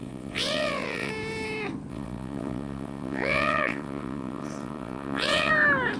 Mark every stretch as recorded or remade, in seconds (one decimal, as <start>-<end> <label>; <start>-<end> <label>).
0.0-1.1 remade; 1.1-1.9 recorded; 1.9-5.5 remade; 5.5-6.0 recorded